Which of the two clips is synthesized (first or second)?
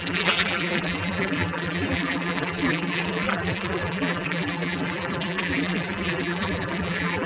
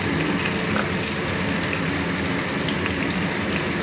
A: first